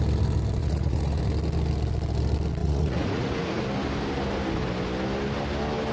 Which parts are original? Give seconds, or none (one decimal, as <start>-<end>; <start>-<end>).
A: 0.0-0.6; 1.2-2.6; 3.6-5.9